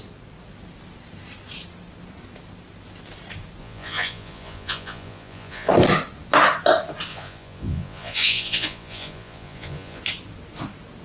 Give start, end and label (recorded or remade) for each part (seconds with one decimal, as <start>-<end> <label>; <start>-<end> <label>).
0.0-3.6 recorded; 3.6-5.7 remade; 5.7-7.1 recorded; 7.1-10.0 remade; 10.0-11.0 recorded